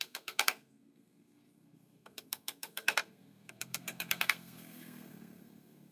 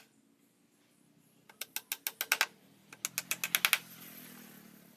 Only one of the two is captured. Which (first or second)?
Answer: second